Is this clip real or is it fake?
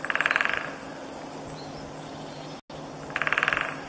real